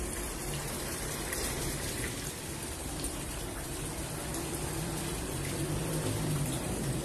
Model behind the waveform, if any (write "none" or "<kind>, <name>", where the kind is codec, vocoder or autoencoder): vocoder, BigVGAN v2